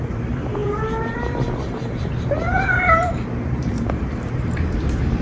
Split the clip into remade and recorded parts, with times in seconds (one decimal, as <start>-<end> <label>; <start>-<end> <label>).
0.0-5.2 remade